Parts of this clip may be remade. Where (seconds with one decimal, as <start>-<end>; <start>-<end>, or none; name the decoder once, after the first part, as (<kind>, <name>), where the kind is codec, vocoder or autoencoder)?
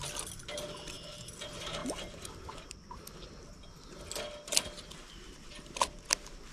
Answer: none